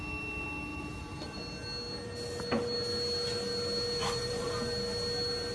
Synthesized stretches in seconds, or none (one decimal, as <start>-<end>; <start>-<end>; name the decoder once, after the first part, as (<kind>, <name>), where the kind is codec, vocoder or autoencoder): 0.7-1.4 (vocoder, BigVGAN v2); 4.0-4.5